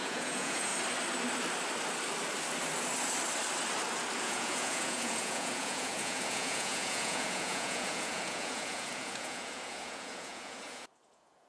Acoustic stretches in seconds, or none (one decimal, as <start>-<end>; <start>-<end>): 0.7-4.2